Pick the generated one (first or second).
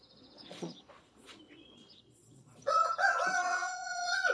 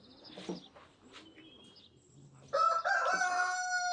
first